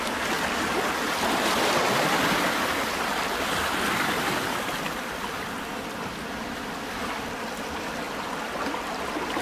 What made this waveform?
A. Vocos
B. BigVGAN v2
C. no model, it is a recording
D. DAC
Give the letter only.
C